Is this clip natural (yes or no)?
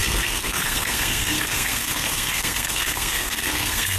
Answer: no